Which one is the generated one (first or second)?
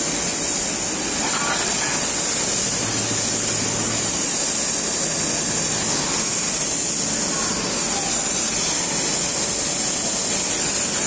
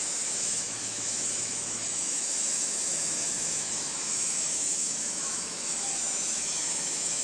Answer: second